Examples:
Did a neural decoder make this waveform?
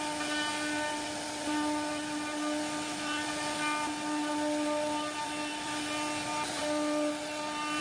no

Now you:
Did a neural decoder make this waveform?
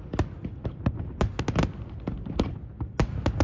no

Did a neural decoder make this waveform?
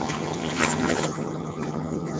yes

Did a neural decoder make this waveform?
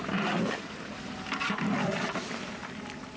no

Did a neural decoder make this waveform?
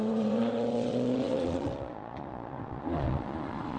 yes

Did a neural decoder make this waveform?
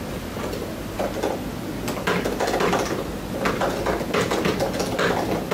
no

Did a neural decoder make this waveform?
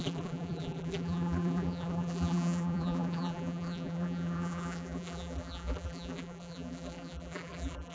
yes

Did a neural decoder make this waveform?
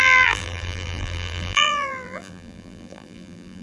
yes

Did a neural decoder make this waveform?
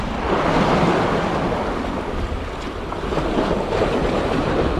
no